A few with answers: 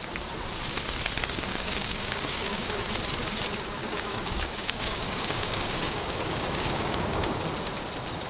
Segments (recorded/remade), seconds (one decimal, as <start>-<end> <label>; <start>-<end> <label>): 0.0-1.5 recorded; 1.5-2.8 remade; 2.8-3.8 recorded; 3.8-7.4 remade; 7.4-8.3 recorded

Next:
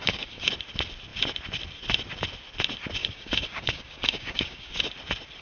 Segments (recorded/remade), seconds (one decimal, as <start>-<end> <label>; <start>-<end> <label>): 0.0-0.5 remade; 0.5-3.0 recorded; 3.0-4.9 remade; 4.9-5.4 recorded

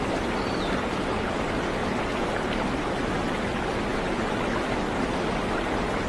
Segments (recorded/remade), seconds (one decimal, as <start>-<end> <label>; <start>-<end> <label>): 0.0-6.1 recorded

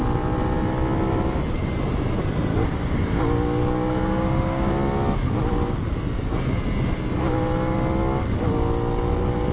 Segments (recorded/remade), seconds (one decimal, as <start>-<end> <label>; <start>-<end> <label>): 0.0-2.5 recorded; 2.5-3.2 remade; 3.2-3.6 recorded; 3.6-4.7 remade; 4.7-9.5 recorded

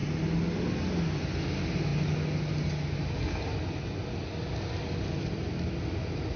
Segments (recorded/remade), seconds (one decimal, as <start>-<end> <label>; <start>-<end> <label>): 0.0-6.4 recorded

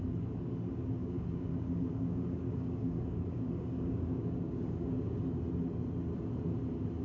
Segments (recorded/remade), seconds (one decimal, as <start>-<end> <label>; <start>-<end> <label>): 0.0-1.0 recorded; 1.0-5.2 remade; 5.2-7.0 recorded

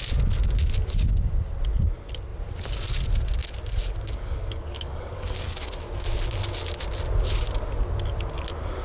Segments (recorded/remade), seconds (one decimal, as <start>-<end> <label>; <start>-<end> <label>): 0.0-3.4 recorded; 3.4-5.8 remade; 5.8-8.8 recorded